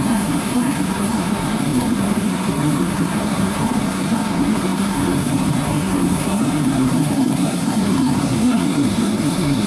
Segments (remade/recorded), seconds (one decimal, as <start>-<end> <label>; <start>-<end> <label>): 0.0-9.7 remade